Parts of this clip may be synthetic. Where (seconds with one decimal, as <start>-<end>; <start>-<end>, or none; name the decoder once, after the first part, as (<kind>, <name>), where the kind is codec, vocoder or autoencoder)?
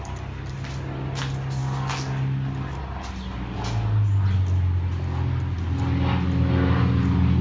none